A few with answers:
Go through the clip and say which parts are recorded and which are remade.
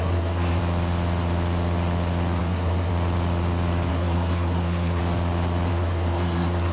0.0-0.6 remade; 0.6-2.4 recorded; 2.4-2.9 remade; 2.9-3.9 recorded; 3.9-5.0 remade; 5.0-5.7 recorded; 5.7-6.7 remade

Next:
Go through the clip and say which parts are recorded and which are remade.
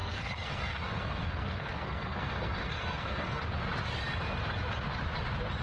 0.0-3.4 remade; 3.4-5.6 recorded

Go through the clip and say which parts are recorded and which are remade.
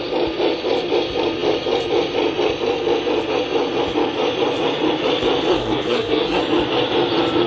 0.0-5.5 recorded; 5.5-6.4 remade; 6.4-7.5 recorded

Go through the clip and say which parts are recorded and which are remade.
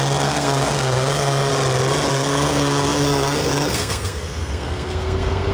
0.0-1.5 remade; 1.5-2.1 recorded; 2.1-5.5 remade